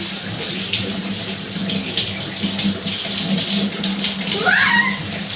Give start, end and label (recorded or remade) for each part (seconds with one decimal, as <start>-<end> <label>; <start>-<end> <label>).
0.0-1.6 remade; 1.6-3.4 recorded; 3.4-5.4 remade

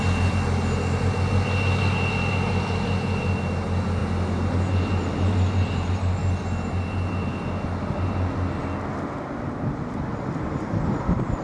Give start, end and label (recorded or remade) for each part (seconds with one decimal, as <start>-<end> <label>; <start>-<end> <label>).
0.0-11.4 recorded

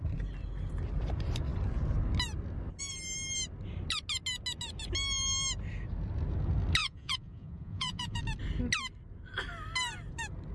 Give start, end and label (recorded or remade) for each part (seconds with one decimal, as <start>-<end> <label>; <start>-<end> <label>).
0.0-6.8 recorded; 6.8-8.2 remade; 8.2-10.5 recorded

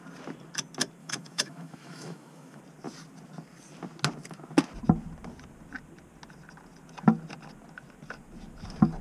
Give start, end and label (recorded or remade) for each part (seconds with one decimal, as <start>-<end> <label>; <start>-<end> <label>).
0.0-1.0 recorded; 1.0-2.6 remade; 2.6-9.0 recorded

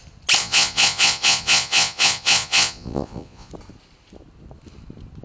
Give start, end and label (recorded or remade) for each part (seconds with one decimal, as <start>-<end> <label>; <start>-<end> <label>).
0.0-0.4 recorded; 0.4-3.5 remade; 3.5-5.2 recorded